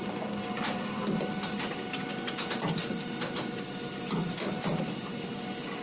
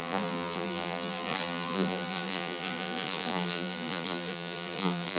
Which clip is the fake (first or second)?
second